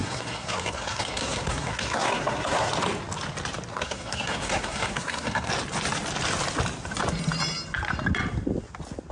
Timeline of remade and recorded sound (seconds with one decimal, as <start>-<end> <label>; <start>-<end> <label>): 0.0-2.7 remade; 2.7-3.7 recorded; 3.7-5.5 remade; 5.5-9.1 recorded